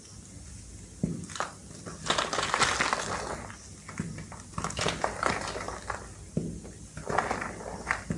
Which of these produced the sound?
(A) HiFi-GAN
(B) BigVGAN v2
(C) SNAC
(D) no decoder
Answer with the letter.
D